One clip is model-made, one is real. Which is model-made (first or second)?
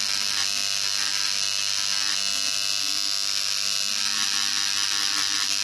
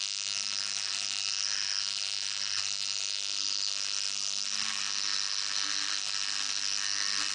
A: second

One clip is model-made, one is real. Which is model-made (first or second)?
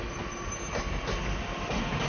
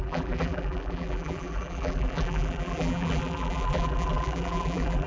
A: second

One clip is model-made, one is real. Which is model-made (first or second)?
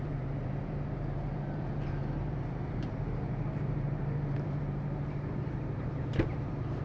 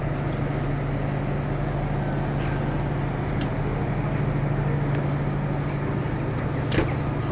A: first